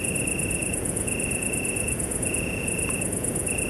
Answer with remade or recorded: remade